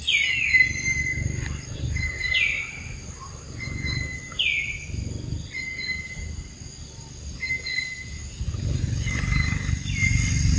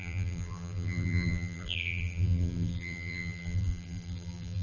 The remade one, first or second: second